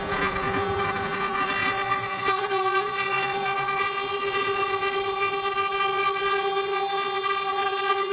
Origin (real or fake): fake